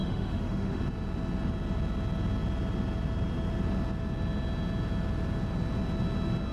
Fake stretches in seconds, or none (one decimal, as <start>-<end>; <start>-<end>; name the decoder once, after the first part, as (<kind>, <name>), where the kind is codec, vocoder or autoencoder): 0.0-0.8 (autoencoder, DAC-VAE)

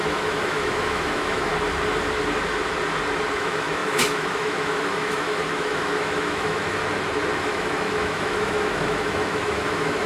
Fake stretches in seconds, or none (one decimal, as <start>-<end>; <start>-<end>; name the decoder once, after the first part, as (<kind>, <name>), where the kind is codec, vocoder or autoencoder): 0.0-1.5 (autoencoder, DAC-VAE); 3.3-6.8; 7.4-10.1